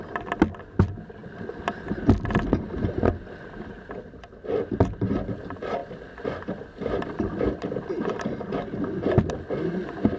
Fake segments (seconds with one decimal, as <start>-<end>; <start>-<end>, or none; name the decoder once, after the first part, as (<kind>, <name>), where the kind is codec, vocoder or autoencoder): none

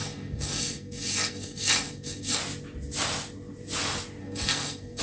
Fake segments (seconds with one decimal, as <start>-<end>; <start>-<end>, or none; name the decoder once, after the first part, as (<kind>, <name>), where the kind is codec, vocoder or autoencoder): 0.0-2.4 (codec, SNAC); 4.2-5.0

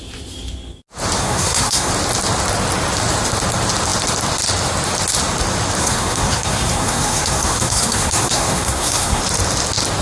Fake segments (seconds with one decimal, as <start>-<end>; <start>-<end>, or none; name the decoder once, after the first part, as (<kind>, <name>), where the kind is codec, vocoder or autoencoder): 1.2-1.9 (codec, SNAC); 5.8-9.2

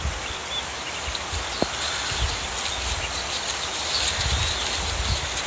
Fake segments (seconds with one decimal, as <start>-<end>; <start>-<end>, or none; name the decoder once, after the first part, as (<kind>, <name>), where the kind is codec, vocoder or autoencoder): none

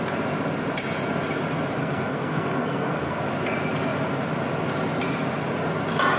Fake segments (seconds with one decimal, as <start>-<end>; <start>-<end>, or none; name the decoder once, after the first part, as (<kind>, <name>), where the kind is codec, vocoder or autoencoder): 1.8-3.2 (codec, SNAC)

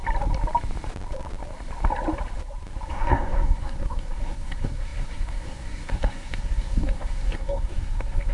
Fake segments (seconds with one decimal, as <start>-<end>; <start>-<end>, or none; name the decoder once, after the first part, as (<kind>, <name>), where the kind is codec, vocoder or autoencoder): 2.9-8.3 (codec, SNAC)

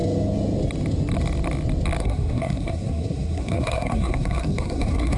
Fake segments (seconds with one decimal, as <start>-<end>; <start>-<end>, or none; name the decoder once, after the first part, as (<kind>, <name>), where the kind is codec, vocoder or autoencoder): 2.0-5.2 (codec, SNAC)